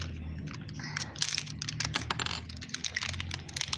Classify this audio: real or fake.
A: real